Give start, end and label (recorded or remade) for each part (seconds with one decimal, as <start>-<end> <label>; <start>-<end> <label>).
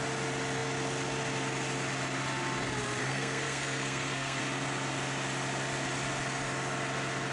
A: 0.0-3.0 recorded; 3.0-4.4 remade; 4.4-7.3 recorded